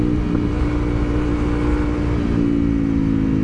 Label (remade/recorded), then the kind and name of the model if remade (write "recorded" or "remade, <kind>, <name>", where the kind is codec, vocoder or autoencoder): recorded